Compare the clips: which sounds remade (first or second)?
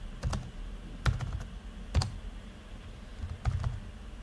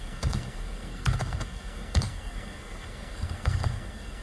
second